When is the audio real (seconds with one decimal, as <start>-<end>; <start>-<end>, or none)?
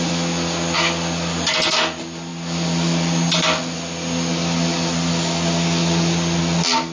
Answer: 0.0-6.9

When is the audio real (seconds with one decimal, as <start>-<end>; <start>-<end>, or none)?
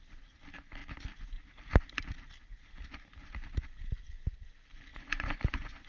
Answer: 0.0-4.9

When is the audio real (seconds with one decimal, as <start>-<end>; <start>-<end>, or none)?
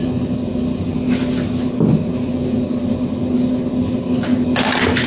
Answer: 0.0-5.1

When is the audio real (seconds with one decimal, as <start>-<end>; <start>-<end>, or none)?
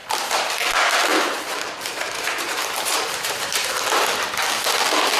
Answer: 0.5-1.1; 3.7-5.2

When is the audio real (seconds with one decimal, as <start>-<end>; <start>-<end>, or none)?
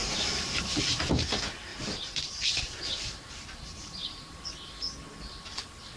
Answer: 1.1-1.7; 4.5-6.0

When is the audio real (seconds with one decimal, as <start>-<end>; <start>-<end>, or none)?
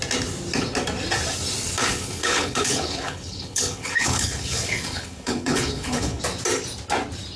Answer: 0.0-1.8; 6.2-7.4